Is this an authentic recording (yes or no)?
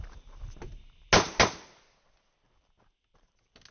yes